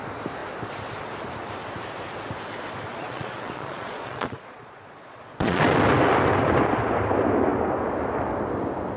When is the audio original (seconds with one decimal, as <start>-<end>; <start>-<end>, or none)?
0.0-2.9; 5.6-9.0

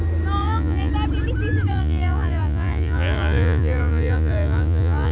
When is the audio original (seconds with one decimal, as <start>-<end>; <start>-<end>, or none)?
0.0-0.4; 0.9-1.7

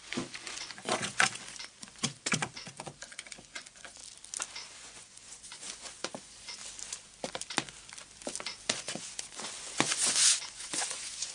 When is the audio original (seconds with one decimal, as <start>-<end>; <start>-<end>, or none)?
4.0-4.7; 6.6-8.7

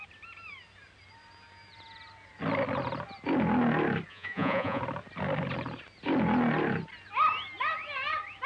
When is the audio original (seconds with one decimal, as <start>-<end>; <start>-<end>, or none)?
0.0-4.1; 4.8-8.5

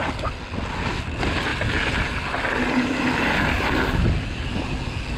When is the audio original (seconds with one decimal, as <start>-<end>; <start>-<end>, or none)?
0.0-5.2

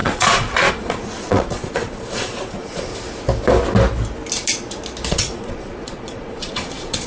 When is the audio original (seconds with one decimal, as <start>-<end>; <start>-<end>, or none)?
2.9-5.1

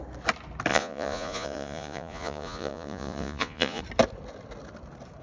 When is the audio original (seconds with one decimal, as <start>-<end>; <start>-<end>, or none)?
0.0-0.7; 3.8-5.2

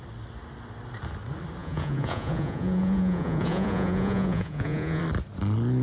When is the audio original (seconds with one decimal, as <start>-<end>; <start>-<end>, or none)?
0.0-1.6; 5.0-5.8